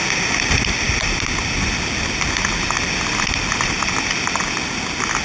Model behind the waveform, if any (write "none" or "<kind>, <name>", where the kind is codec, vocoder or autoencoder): none